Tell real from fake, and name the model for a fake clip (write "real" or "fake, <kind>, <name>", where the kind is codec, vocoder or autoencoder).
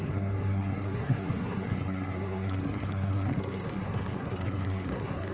fake, codec, SNAC